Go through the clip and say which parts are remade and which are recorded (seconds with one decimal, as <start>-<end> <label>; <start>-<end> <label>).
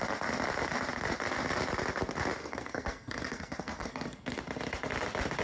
0.0-2.4 recorded; 2.4-4.4 remade; 4.4-5.4 recorded